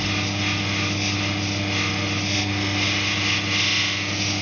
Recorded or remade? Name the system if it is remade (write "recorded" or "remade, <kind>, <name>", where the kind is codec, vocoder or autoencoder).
recorded